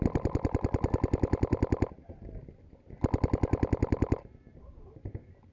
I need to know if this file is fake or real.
real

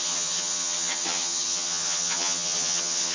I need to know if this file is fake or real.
fake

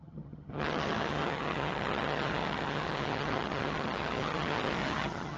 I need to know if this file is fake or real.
fake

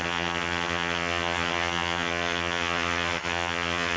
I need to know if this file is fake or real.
fake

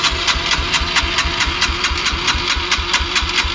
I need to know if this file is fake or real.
real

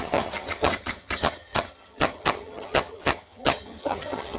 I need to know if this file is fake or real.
fake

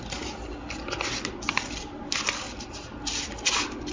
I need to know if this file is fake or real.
real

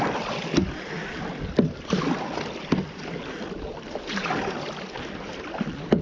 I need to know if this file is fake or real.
real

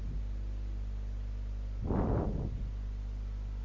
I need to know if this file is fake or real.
real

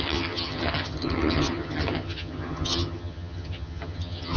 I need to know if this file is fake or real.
fake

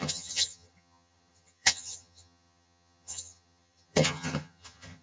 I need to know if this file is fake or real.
fake